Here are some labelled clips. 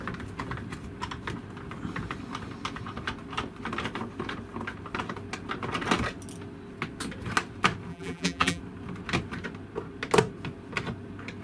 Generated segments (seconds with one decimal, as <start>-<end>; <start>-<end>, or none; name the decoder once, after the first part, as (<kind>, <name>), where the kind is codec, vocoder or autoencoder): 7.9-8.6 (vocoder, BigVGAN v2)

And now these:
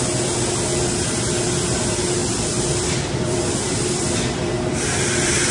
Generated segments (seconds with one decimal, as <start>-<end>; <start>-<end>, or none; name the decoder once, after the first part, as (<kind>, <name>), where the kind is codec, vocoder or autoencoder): 2.2-5.5 (vocoder, BigVGAN v2)

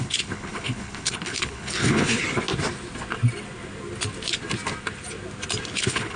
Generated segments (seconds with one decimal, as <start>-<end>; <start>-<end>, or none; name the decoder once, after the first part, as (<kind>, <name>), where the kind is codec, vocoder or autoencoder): 0.0-2.2 (codec, HILCodec); 5.7-6.2